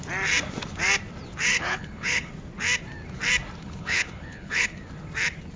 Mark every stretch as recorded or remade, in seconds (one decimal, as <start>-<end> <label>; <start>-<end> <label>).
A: 0.0-1.5 recorded; 1.5-2.3 remade; 2.3-3.6 recorded; 3.6-4.8 remade; 4.8-5.6 recorded